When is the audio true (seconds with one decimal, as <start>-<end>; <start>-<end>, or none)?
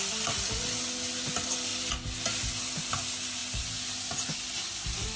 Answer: 0.0-5.2